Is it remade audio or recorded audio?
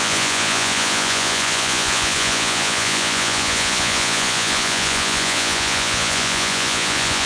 remade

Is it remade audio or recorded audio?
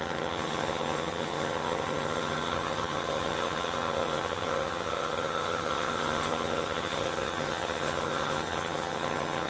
remade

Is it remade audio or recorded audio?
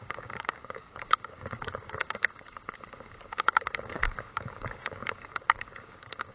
remade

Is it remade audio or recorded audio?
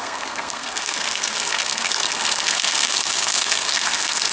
remade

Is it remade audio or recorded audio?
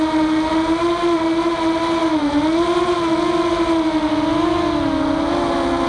recorded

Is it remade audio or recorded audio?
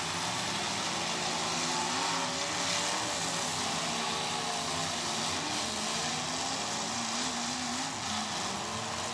recorded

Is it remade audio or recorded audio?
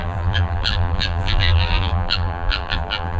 remade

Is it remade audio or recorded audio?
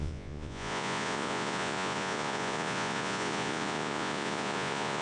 remade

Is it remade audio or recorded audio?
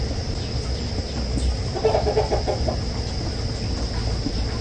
recorded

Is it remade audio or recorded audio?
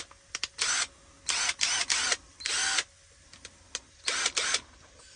recorded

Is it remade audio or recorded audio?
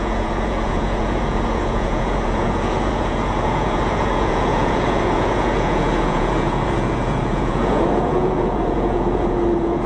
remade